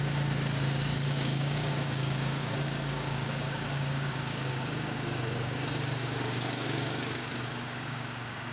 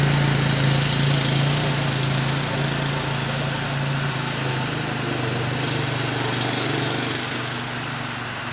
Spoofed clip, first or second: first